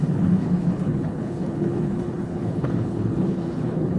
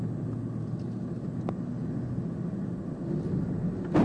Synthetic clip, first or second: first